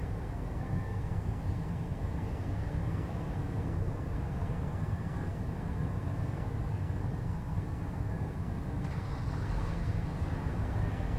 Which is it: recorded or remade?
remade